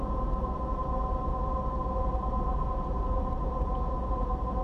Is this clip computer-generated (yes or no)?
no